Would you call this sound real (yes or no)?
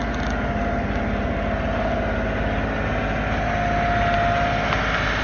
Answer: yes